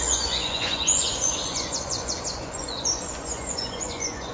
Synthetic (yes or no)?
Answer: yes